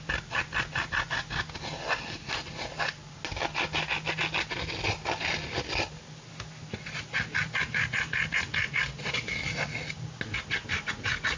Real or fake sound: real